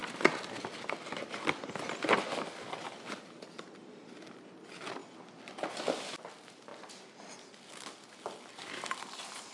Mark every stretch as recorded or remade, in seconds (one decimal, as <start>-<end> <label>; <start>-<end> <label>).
0.0-9.5 recorded